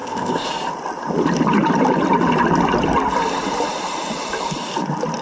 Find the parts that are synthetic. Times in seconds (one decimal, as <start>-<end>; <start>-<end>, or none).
0.0-0.5